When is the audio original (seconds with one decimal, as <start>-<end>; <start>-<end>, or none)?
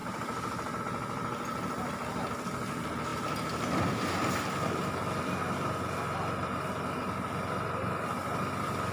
0.0-8.9